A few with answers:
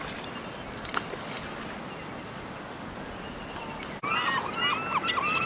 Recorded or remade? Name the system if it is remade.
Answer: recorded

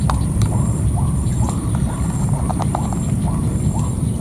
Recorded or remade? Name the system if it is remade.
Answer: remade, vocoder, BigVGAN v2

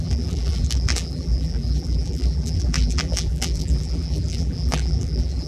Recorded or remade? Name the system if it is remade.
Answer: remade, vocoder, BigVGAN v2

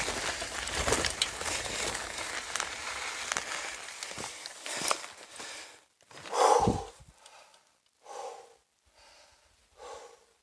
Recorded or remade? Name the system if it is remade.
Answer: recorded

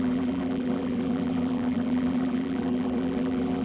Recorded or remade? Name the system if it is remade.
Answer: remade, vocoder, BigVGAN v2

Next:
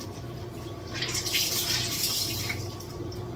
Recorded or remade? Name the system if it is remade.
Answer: remade, vocoder, BigVGAN v2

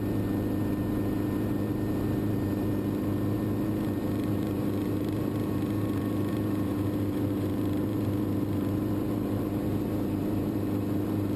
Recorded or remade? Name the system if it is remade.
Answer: remade, vocoder, BigVGAN v2